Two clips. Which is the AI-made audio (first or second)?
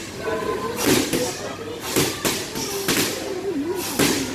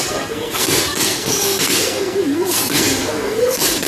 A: second